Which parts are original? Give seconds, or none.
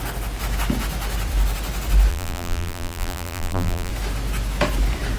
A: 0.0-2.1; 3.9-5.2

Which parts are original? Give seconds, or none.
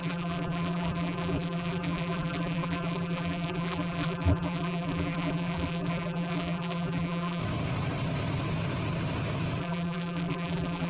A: 7.4-9.6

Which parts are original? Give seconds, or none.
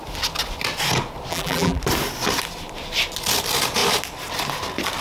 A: 0.0-1.3; 1.8-5.0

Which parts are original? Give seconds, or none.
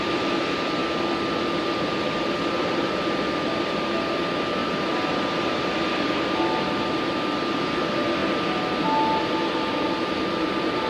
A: 0.0-10.9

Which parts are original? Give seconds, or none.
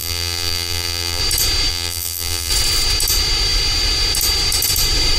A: 1.2-1.7; 2.5-5.2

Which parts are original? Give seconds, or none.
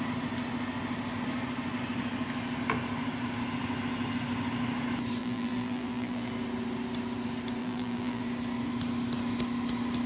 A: 0.0-5.2; 6.3-7.6; 8.2-10.1